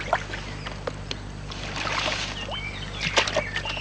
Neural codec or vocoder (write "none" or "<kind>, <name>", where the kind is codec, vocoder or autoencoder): none